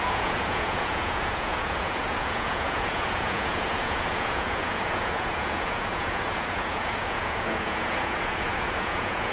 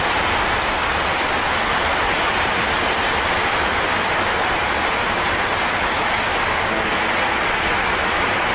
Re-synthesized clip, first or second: first